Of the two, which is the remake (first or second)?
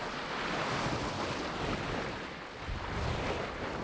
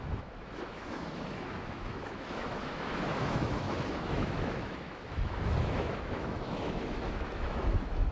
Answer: second